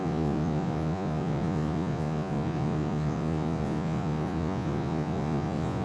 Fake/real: fake